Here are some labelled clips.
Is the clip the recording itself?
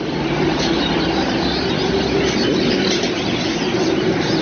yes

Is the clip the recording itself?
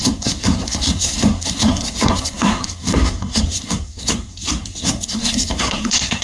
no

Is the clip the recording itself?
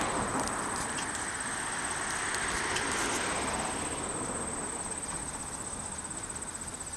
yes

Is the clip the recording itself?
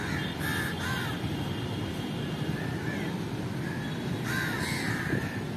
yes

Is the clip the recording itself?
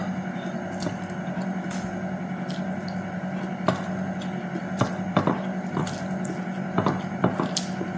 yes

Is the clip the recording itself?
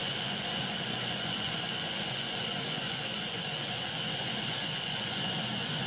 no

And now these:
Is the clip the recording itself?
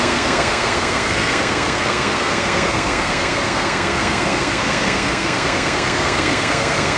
no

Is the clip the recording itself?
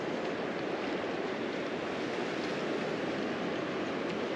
yes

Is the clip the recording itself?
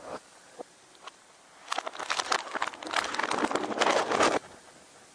yes